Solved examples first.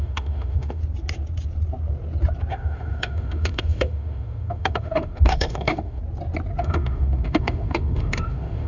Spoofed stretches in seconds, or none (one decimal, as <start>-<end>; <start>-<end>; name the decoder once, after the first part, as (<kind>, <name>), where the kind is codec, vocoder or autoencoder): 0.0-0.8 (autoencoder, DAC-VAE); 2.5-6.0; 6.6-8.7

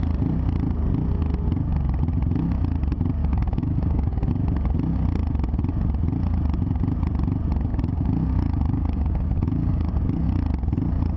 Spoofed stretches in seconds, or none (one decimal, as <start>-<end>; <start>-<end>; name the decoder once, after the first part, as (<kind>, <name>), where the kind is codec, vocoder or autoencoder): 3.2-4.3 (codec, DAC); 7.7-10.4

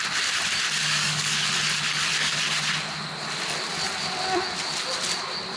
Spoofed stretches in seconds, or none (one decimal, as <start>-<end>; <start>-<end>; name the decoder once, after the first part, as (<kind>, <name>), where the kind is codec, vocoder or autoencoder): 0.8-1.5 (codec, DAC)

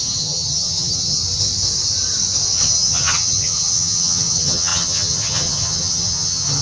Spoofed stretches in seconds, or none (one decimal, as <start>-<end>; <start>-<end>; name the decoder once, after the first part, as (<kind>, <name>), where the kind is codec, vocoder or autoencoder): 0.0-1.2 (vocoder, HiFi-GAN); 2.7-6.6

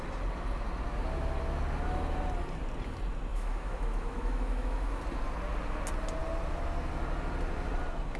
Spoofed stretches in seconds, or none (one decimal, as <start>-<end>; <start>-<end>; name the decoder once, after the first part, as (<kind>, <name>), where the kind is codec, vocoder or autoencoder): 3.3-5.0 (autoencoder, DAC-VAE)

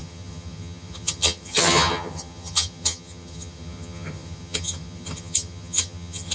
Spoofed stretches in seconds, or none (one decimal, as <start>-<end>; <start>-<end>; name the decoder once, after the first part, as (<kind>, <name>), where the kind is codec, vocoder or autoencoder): 0.0-6.3 (vocoder, HiFi-GAN)

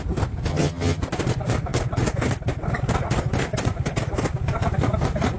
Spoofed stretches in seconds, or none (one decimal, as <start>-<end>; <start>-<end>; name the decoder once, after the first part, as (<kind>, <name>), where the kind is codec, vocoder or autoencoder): 0.5-1.0 (vocoder, HiFi-GAN)